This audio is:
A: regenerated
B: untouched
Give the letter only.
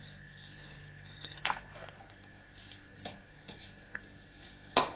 A